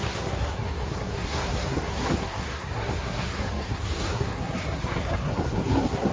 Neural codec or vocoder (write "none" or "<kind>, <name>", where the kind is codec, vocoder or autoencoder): codec, SNAC